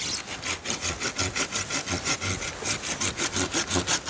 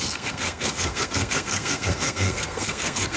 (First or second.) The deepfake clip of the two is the second